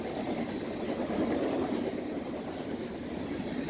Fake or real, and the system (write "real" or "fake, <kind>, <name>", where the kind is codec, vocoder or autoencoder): fake, vocoder, BigVGAN v2